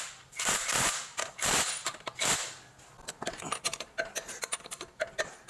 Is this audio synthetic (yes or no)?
no